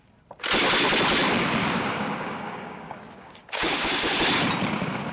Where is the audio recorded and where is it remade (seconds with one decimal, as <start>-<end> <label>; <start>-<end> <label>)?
0.0-1.6 recorded; 1.6-4.2 remade; 4.2-5.1 recorded